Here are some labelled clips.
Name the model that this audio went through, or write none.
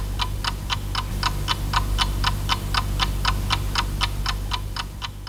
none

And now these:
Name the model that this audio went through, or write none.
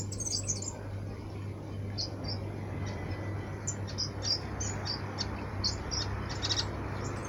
none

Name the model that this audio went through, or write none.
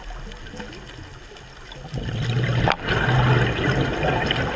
none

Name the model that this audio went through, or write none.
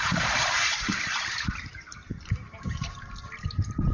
vocoder, BigVGAN v2